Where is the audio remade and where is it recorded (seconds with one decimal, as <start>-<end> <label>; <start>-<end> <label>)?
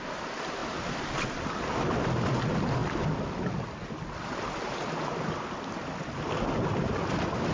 0.0-7.5 recorded